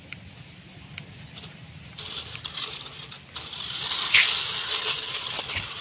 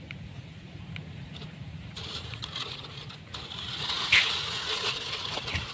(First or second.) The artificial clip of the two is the second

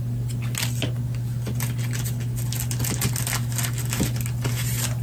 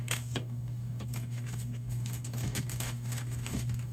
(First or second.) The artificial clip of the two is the second